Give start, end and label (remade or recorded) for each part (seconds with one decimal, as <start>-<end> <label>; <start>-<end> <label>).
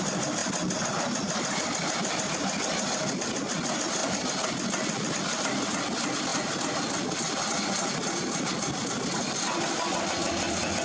0.0-10.8 recorded